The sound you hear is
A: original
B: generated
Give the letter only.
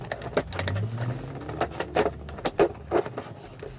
A